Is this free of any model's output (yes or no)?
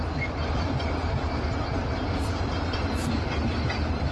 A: no